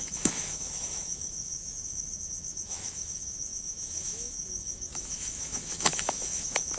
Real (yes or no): no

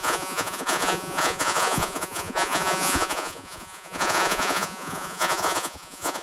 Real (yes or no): no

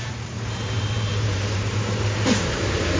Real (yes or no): no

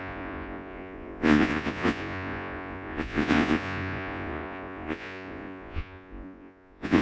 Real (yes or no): no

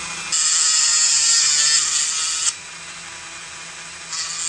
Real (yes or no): yes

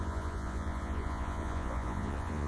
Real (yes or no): no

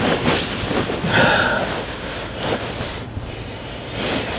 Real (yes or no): yes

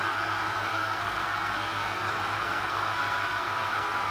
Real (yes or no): no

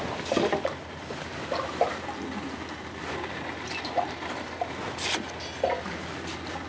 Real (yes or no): yes